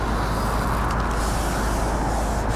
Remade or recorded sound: recorded